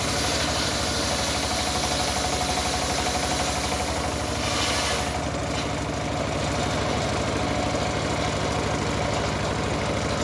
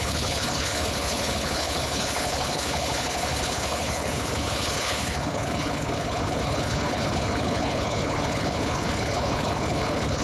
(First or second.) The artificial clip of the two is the second